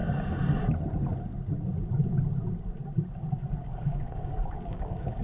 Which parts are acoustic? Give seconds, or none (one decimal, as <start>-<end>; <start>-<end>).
0.0-3.6